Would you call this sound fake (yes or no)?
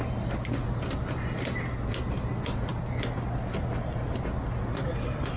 no